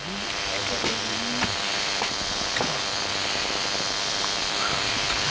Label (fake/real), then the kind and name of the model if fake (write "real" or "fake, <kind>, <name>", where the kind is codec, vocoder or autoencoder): real